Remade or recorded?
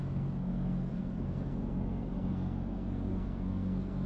remade